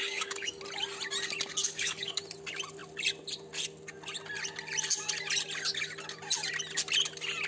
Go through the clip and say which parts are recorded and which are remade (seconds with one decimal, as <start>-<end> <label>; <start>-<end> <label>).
0.0-0.6 remade; 0.6-1.6 recorded; 1.6-2.2 remade; 2.2-7.5 recorded